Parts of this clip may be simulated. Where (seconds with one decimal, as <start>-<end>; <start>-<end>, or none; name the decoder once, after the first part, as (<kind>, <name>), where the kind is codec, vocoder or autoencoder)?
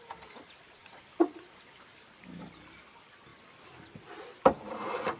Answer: none